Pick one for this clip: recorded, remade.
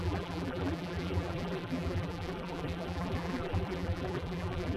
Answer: remade